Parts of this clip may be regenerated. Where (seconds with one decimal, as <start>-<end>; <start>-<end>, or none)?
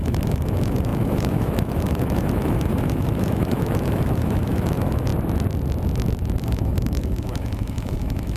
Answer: 0.0-5.1; 6.4-8.4